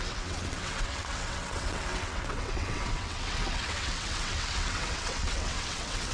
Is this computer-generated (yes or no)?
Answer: yes